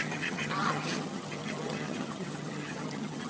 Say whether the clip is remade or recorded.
remade